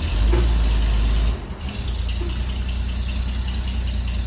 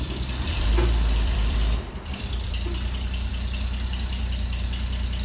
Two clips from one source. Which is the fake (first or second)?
second